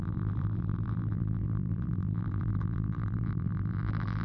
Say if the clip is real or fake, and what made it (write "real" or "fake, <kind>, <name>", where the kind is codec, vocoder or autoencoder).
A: fake, vocoder, BigVGAN v2